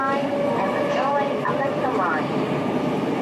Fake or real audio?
real